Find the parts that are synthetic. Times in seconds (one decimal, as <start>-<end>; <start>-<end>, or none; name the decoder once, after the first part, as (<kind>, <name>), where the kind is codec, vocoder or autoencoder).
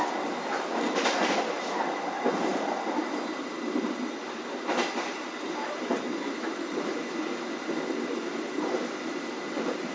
none